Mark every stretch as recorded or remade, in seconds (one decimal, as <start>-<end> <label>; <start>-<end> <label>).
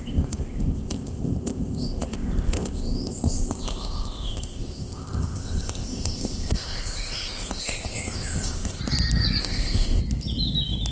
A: 0.0-8.8 remade; 8.8-9.4 recorded; 9.4-10.0 remade; 10.0-10.9 recorded